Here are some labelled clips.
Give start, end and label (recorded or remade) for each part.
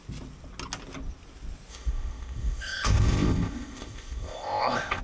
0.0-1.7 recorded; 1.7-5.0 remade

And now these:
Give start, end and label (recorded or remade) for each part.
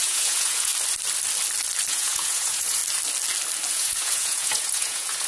0.0-0.7 remade; 0.7-1.9 recorded; 1.9-2.8 remade; 2.8-3.7 recorded; 3.7-5.3 remade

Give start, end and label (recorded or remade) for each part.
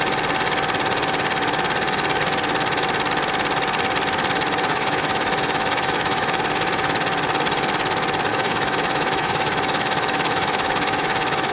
0.0-4.7 recorded; 4.7-6.4 remade; 6.4-8.3 recorded; 8.3-11.5 remade